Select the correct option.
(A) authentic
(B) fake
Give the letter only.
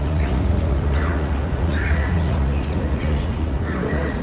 B